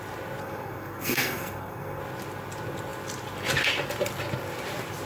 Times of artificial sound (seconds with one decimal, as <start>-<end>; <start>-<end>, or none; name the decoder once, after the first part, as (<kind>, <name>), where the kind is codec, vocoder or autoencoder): 0.4-2.0 (codec, SNAC)